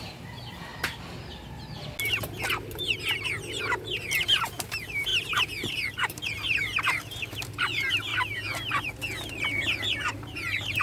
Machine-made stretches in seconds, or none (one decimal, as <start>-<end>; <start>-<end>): 0.0-0.7; 3.6-8.1; 9.8-10.8